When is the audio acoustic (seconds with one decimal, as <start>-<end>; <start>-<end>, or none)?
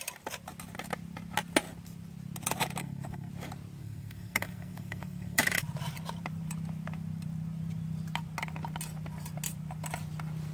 0.0-2.8; 3.3-3.8; 5.4-10.5